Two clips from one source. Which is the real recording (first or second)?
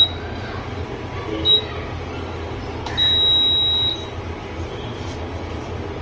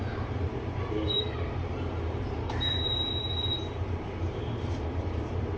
first